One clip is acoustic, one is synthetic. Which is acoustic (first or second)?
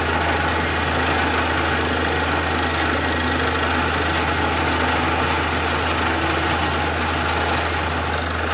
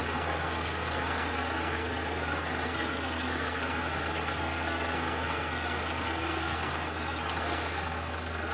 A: first